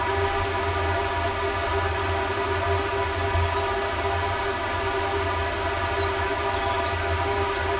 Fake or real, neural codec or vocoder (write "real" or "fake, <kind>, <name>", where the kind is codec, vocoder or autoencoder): real